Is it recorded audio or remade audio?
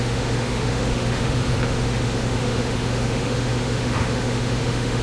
remade